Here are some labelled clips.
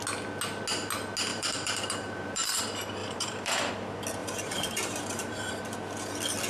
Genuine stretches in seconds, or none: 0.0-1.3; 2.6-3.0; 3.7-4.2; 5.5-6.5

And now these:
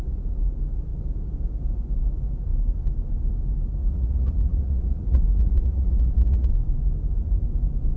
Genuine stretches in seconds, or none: 0.0-3.8; 6.5-8.0

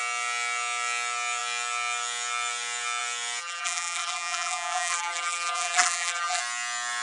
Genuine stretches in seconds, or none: 0.0-3.4; 6.4-7.0

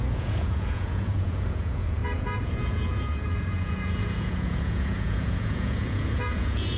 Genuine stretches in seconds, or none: none

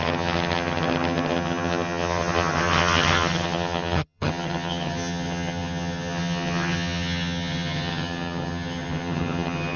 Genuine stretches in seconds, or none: none

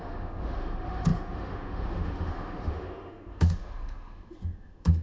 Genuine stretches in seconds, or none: none

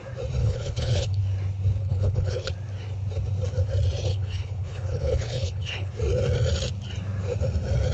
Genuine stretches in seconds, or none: 0.0-0.4; 1.2-1.8; 2.5-4.1; 5.9-7.9

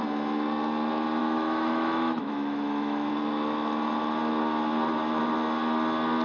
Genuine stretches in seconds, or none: 0.0-1.2; 3.1-6.2